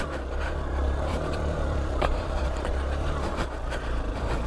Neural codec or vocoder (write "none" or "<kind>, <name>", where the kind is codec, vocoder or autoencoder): vocoder, BigVGAN v2